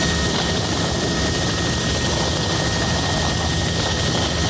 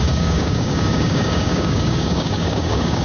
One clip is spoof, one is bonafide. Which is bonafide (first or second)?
first